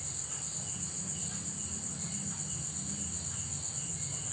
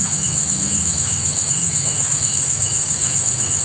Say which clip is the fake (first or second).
second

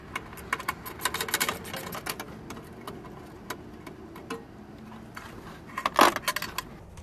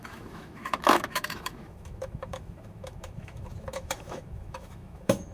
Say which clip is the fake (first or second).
second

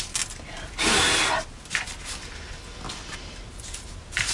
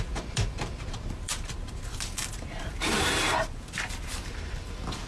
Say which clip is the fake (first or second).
second